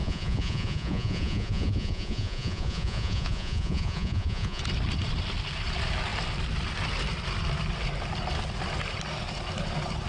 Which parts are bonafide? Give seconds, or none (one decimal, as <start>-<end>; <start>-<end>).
4.6-10.1